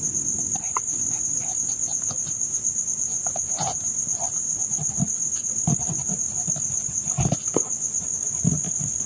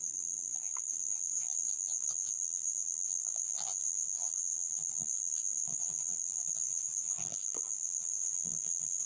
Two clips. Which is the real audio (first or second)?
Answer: first